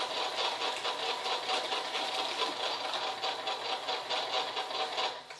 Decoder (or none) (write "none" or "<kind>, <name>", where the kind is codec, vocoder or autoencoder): none